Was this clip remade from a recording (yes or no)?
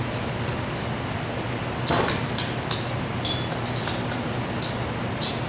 no